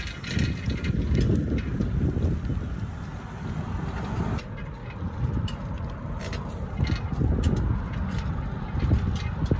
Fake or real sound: real